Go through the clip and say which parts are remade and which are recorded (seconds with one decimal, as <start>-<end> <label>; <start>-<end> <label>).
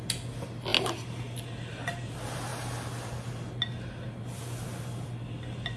0.0-5.8 recorded